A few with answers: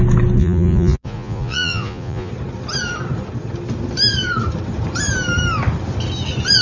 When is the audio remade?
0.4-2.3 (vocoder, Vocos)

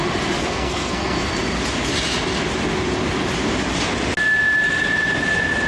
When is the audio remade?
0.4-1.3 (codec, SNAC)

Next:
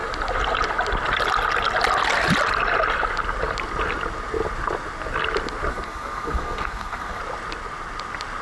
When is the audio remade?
5.7-7.2 (codec, SNAC)